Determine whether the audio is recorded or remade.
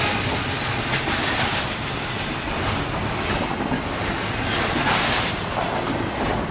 recorded